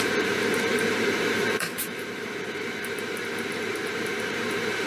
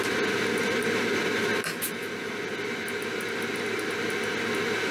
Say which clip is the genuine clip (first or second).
second